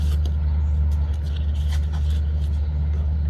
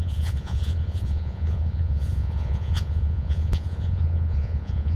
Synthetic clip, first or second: second